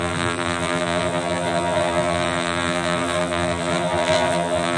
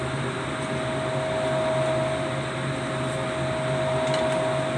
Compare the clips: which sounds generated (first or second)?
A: first